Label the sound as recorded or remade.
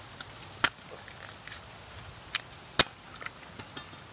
recorded